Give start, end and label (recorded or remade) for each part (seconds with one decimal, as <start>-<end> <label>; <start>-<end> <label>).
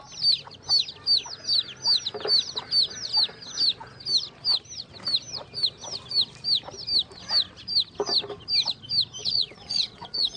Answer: 0.0-9.2 recorded; 9.2-10.4 remade